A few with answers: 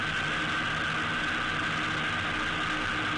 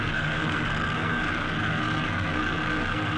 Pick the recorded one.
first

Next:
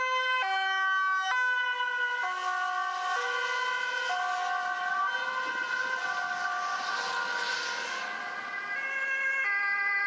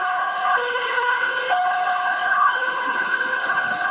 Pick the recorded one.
first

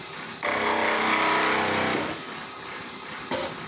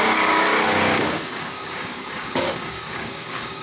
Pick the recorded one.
first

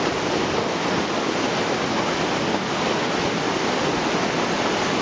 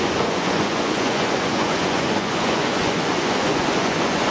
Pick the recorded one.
first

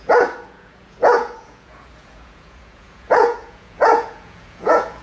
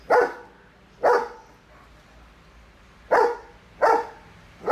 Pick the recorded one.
second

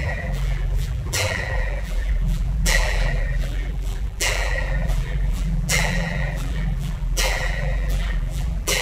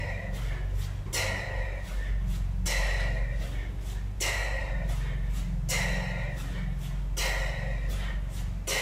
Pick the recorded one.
second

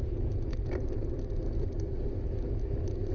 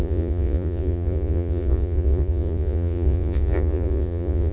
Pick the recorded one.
first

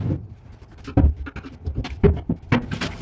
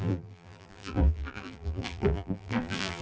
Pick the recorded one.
first